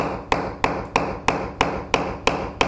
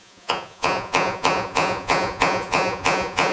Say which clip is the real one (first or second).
first